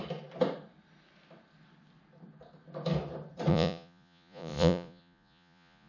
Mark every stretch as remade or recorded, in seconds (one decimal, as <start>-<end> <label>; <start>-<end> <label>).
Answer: 0.0-3.5 recorded; 3.5-5.9 remade